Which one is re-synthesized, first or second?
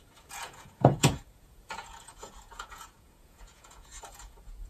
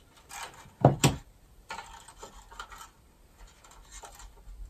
first